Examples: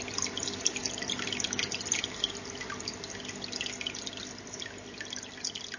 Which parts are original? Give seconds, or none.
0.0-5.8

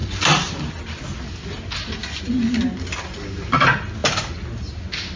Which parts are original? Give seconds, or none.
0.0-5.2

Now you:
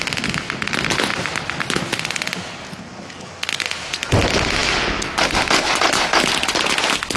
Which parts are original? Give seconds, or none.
0.0-7.2

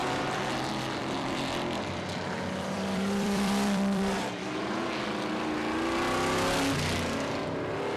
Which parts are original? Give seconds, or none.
4.8-8.0

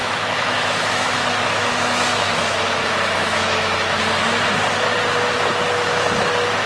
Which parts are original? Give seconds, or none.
4.0-6.7